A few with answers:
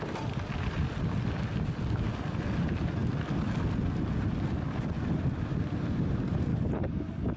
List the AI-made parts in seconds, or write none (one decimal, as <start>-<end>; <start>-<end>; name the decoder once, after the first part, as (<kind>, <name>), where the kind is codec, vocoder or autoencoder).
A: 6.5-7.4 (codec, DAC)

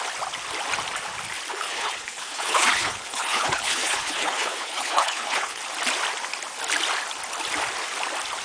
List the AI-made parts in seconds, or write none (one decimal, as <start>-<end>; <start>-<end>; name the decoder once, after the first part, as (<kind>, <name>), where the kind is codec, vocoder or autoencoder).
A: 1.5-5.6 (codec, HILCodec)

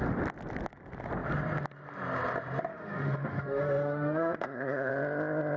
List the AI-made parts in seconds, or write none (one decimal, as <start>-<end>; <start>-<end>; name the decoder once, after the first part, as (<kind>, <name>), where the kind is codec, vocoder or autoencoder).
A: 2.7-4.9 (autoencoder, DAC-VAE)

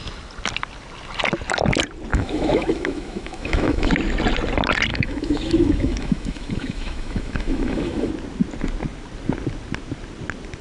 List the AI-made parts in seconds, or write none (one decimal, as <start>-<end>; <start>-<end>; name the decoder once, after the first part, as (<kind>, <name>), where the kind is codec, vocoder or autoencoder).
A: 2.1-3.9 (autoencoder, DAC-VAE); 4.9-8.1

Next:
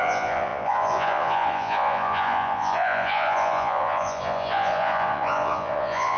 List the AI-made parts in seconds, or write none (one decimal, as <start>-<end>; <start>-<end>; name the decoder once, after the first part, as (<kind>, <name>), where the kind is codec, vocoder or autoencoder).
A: 0.0-6.2 (vocoder, Vocos)